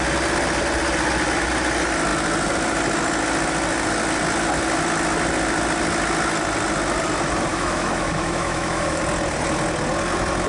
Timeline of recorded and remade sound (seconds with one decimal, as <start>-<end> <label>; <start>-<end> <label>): 0.0-7.5 recorded; 7.5-9.0 remade; 9.0-10.5 recorded